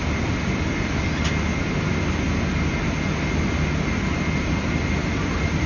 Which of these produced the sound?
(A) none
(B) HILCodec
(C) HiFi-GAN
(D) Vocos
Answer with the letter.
A